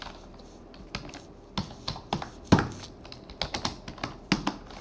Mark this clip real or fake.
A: real